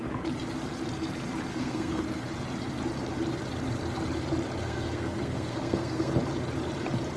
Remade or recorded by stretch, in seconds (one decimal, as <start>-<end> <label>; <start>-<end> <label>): 0.0-1.5 recorded; 1.5-2.0 remade; 2.0-4.6 recorded; 4.6-6.1 remade; 6.1-7.2 recorded